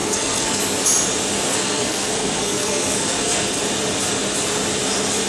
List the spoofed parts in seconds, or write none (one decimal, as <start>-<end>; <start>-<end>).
0.0-0.6; 1.5-3.6